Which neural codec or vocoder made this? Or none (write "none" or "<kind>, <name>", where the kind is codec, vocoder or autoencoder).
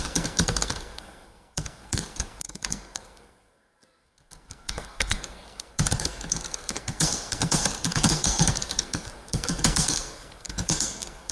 codec, SNAC